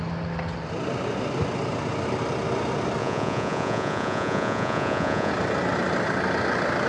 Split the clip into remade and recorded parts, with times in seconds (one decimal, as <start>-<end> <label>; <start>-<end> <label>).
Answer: 0.0-3.0 recorded; 3.0-5.3 remade; 5.3-6.9 recorded